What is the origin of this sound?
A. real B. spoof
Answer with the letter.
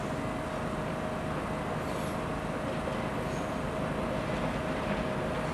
A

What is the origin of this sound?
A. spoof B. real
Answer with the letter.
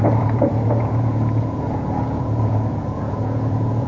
A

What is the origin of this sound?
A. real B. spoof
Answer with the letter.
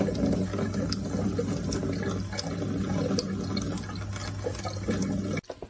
A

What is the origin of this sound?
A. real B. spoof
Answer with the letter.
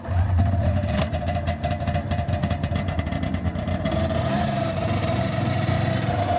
B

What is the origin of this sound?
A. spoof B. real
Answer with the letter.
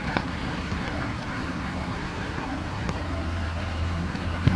A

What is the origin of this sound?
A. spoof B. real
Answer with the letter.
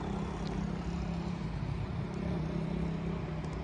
B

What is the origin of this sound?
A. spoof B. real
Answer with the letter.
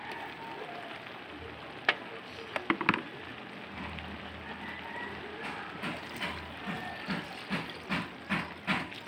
B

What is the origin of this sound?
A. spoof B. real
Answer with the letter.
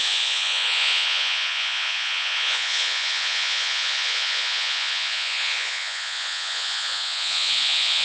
A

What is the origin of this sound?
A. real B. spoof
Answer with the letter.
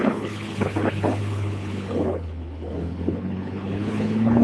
B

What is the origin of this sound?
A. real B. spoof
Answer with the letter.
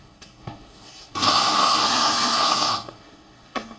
B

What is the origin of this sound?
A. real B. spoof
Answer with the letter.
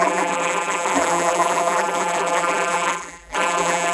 B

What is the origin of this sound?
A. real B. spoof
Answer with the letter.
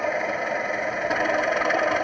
A